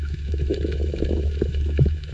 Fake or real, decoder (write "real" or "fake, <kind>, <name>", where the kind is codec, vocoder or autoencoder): fake, autoencoder, DAC-VAE